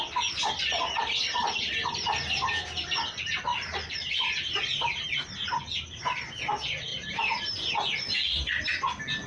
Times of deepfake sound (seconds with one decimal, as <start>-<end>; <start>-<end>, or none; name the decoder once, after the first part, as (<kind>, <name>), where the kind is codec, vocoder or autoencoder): 3.5-5.0 (vocoder, BigVGAN v2); 6.9-7.7